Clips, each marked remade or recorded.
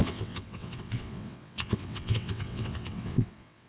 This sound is remade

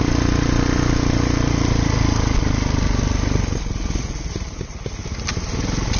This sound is recorded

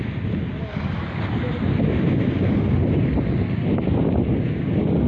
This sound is recorded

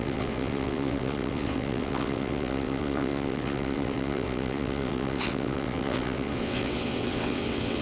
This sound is remade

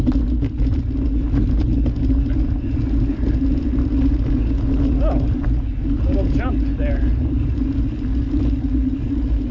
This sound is recorded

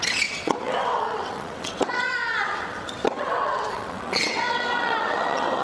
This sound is remade